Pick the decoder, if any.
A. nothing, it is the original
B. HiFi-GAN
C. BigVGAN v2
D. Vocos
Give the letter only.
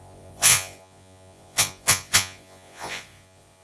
D